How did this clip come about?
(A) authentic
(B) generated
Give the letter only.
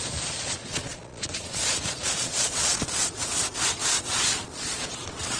B